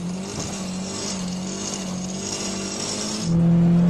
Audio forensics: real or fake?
real